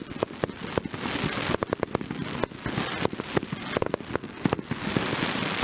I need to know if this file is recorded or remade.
recorded